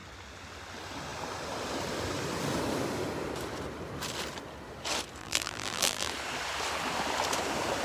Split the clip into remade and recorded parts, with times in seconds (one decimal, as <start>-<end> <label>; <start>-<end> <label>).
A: 0.0-5.2 recorded; 5.2-6.1 remade; 6.1-7.8 recorded